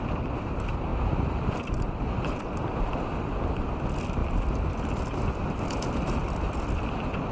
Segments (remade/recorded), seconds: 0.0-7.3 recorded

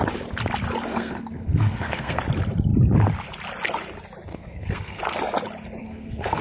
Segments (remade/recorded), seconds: 0.0-0.9 recorded; 0.9-2.2 remade; 2.2-4.3 recorded; 4.3-5.0 remade; 5.0-5.8 recorded; 5.8-6.4 remade